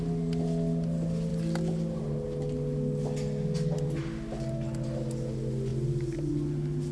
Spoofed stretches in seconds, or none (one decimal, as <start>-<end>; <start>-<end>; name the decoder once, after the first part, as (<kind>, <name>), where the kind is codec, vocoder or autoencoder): none